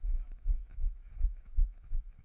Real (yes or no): no